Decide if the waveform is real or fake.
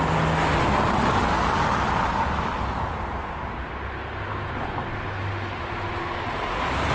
real